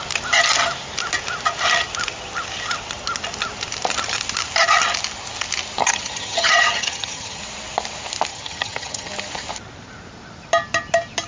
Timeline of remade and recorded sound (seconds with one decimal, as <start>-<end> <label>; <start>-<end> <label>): 0.0-5.8 recorded; 5.8-7.4 remade; 7.4-8.3 recorded; 8.3-9.1 remade; 9.1-11.3 recorded